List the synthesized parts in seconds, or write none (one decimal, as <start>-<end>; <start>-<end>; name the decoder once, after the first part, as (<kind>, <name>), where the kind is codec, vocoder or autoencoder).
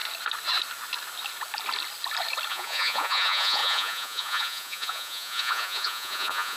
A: 2.5-6.6 (vocoder, Vocos)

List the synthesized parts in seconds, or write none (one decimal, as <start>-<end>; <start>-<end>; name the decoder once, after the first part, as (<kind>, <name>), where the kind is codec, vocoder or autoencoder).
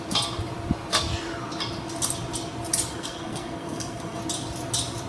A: 2.9-4.2 (codec, SNAC)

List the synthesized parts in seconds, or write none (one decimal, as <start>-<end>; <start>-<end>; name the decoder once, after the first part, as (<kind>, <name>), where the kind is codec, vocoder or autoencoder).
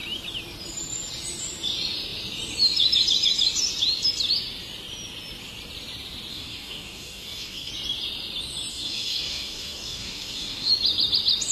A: 6.3-7.7 (codec, DAC); 8.7-10.7